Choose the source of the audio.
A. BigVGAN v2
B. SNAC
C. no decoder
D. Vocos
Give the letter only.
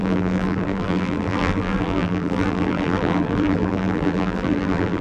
A